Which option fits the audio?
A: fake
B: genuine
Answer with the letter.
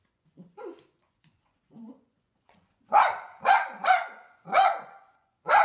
A